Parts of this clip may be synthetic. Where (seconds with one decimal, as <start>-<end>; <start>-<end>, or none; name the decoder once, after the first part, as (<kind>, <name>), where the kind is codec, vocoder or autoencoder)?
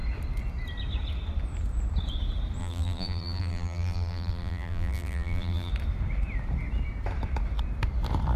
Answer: 2.6-5.7 (vocoder, BigVGAN v2)